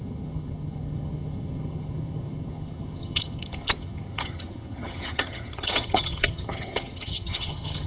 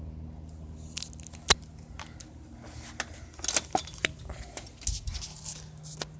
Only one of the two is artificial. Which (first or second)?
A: first